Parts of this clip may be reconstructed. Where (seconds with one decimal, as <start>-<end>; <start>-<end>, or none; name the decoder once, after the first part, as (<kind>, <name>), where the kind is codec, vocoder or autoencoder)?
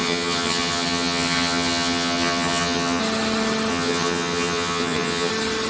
0.0-3.0 (vocoder, HiFi-GAN); 3.7-5.3